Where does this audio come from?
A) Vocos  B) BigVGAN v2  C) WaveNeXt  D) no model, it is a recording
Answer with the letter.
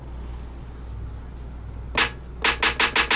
D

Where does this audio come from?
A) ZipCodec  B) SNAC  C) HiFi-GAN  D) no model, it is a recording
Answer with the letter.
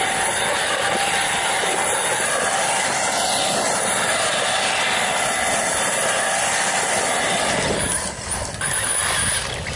D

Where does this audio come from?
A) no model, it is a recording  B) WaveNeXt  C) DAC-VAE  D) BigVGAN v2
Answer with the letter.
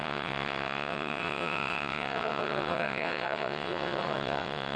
B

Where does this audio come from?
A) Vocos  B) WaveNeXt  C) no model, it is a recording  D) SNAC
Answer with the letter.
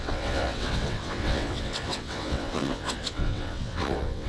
B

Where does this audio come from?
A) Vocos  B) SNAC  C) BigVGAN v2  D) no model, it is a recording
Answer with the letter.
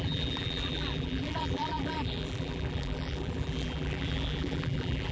C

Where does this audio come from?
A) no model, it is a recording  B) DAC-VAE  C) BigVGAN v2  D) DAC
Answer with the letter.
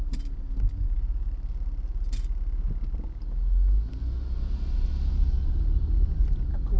A